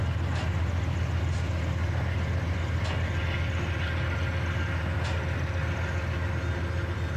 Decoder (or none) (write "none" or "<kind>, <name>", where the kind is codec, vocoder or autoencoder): none